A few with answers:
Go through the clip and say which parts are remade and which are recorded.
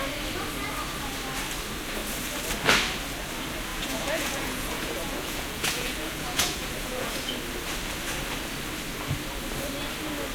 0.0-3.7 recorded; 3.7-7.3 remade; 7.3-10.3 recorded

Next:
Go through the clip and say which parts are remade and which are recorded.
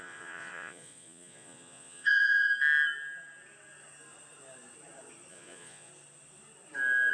0.0-2.5 remade; 2.5-5.3 recorded; 5.3-5.9 remade; 5.9-7.1 recorded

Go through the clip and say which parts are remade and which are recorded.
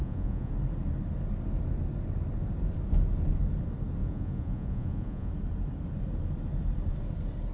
0.0-0.5 remade; 0.5-4.0 recorded; 4.0-5.3 remade; 5.3-7.5 recorded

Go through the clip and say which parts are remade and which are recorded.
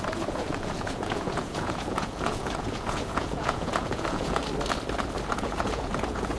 0.0-4.4 remade; 4.4-5.3 recorded; 5.3-6.4 remade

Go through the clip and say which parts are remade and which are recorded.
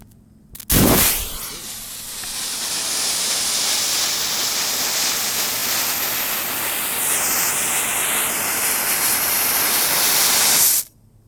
0.0-11.3 recorded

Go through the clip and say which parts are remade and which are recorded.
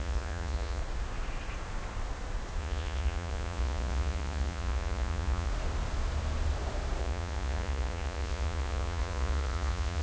0.0-0.8 remade; 0.8-2.6 recorded; 2.6-5.5 remade; 5.5-7.0 recorded; 7.0-10.0 remade